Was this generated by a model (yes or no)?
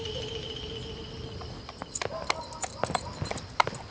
no